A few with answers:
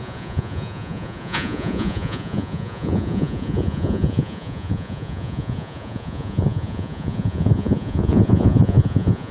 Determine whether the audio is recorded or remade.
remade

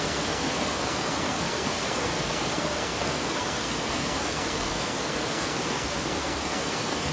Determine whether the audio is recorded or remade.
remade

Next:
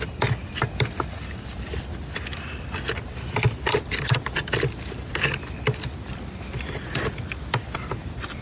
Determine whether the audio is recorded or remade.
recorded